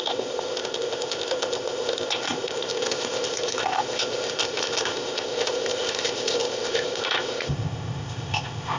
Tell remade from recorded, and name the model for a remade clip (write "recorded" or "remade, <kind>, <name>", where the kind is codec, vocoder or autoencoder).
remade, codec, ZipCodec